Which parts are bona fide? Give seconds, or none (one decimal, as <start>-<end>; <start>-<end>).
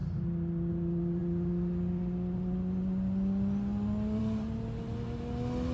0.0-5.7